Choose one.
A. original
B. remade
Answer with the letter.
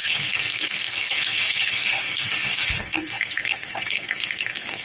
B